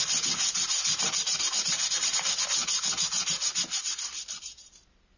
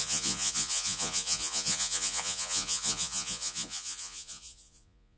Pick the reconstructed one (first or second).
second